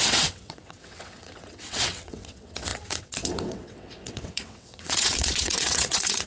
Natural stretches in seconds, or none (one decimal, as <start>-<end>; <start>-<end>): none